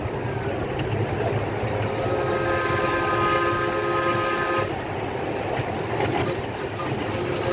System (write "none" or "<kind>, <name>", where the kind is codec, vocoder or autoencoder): none